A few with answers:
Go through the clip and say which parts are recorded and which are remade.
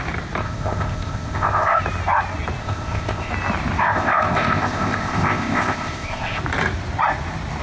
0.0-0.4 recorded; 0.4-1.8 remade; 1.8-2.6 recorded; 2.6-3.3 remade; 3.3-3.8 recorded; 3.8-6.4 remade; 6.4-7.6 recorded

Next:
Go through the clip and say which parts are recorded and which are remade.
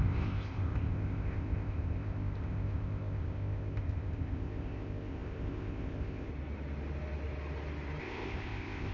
0.0-6.3 remade; 6.3-8.0 recorded; 8.0-8.9 remade